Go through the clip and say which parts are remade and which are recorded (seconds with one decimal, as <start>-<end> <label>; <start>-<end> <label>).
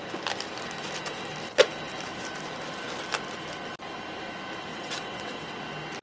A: 0.0-4.7 recorded; 4.7-5.6 remade; 5.6-6.0 recorded